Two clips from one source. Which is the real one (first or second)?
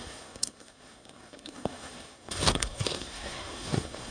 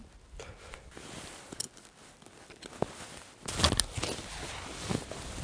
second